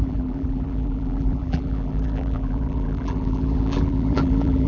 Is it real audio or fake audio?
fake